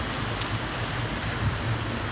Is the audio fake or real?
real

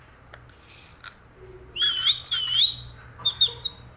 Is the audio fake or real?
real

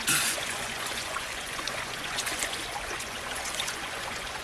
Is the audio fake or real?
fake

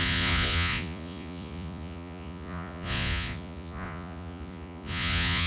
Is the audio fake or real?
fake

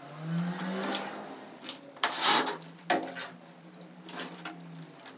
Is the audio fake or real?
real